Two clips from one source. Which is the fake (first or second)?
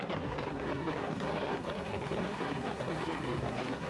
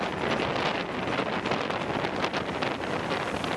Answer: first